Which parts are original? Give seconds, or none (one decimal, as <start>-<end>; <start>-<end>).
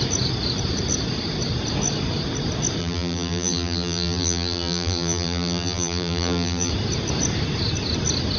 0.0-2.8; 6.7-8.4